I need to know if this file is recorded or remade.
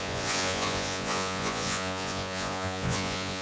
remade